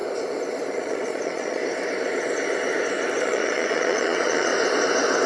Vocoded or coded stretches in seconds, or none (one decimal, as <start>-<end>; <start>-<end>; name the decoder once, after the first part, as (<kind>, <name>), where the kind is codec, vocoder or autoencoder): 0.7-1.6 (vocoder, Vocos); 3.2-4.5